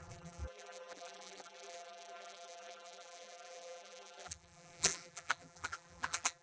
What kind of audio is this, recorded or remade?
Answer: remade